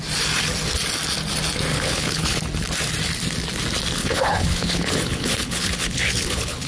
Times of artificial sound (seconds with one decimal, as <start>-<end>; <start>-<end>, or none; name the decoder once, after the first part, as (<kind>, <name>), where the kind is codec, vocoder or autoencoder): 1.7-2.4 (codec, HILCodec); 4.0-6.7

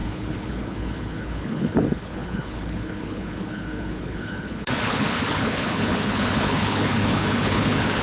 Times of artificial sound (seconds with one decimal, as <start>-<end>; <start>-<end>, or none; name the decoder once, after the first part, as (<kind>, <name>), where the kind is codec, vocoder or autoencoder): 0.0-8.0 (codec, HILCodec)

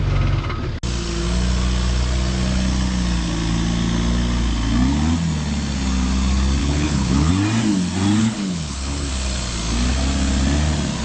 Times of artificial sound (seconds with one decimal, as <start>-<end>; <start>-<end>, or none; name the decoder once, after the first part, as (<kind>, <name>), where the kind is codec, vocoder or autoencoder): 6.6-7.3 (codec, HILCodec); 8.2-9.1

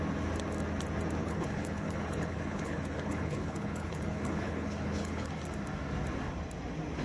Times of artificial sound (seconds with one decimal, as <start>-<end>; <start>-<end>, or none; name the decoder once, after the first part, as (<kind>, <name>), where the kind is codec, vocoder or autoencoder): 1.2-5.3 (codec, HILCodec)

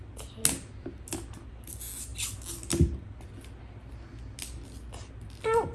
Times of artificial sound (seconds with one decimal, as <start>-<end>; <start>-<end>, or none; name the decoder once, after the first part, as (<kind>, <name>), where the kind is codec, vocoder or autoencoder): none

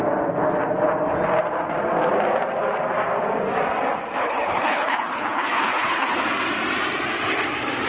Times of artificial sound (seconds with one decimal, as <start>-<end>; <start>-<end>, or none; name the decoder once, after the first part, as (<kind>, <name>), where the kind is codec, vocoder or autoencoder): 4.2-6.2 (codec, HILCodec)

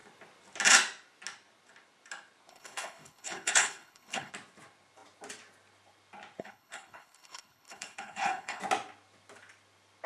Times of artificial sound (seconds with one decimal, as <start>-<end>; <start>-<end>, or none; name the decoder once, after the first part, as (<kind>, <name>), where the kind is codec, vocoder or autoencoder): 2.5-4.3 (codec, HILCodec); 6.4-8.6

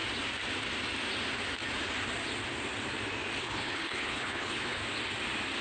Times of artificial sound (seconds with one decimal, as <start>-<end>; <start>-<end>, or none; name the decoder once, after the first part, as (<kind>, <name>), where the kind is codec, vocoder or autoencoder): 3.4-4.8 (codec, HILCodec)